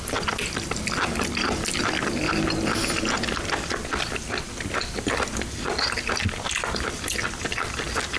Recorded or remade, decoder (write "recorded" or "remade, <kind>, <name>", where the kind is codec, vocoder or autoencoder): recorded